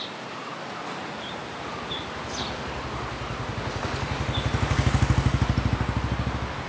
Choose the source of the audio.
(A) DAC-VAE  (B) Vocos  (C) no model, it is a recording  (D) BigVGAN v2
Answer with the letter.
C